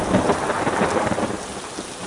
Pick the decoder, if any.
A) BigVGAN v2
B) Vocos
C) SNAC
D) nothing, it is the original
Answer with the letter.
D